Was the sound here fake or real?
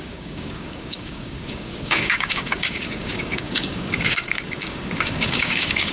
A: fake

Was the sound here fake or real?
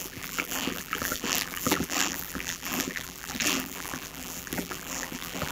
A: fake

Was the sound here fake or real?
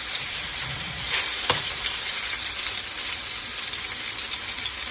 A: fake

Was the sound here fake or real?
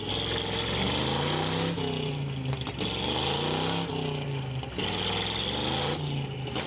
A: real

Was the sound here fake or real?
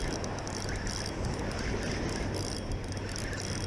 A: real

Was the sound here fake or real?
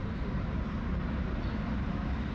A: real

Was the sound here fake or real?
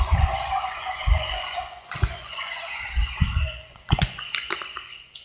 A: fake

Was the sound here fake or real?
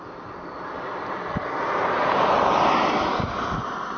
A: real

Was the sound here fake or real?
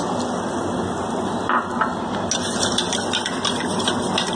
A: real